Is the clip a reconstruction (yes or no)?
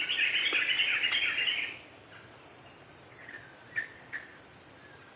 no